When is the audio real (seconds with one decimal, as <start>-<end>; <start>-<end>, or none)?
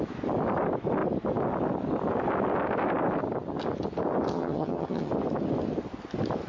0.0-4.3; 5.1-6.5